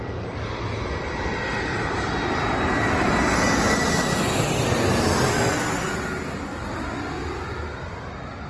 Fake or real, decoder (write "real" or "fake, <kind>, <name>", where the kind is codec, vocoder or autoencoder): real